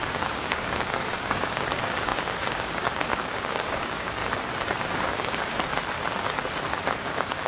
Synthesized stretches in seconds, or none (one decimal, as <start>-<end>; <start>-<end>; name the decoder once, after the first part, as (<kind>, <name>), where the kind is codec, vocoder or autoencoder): 0.0-4.2 (codec, DAC); 4.8-5.5; 7.0-7.5